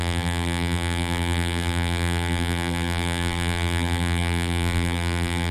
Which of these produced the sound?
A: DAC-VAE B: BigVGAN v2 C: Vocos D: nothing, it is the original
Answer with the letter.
B